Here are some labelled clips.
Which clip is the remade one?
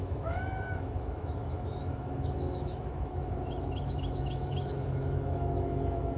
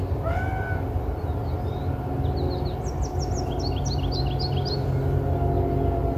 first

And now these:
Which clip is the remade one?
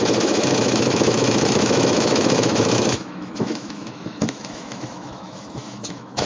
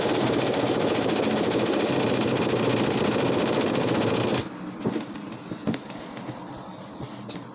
first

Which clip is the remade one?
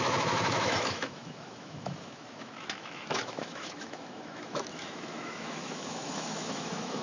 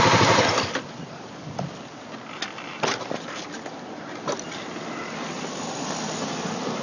first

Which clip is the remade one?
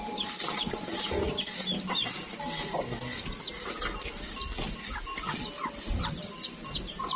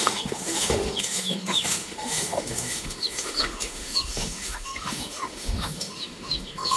second